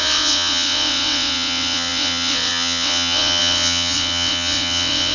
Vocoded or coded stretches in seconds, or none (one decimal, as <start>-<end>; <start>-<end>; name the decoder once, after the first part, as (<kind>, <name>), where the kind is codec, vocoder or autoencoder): 0.0-5.1 (vocoder, WaveNeXt)